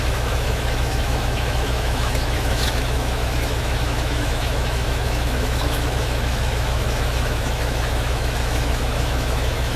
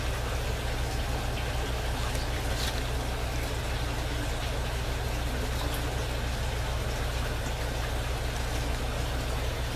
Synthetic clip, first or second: first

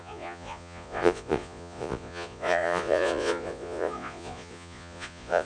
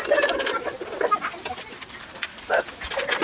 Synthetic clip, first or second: first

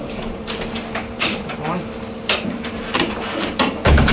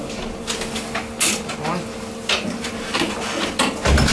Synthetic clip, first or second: first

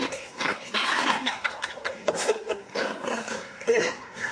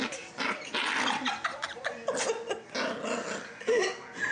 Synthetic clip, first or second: first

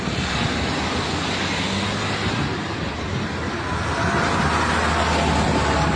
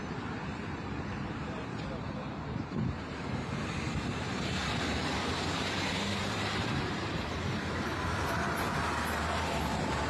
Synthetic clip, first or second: second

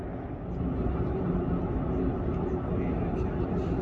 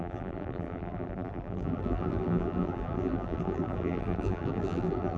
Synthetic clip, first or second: second